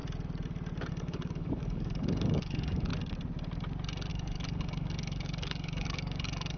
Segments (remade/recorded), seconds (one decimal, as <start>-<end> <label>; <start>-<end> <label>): 0.0-0.9 recorded; 0.9-2.9 remade; 2.9-4.1 recorded; 4.1-6.6 remade